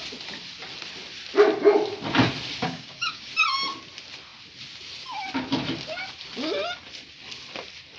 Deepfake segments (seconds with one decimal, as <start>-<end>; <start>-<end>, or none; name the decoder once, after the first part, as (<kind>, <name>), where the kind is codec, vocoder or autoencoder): 2.6-3.3 (codec, DAC)